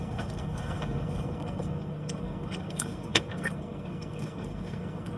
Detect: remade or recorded remade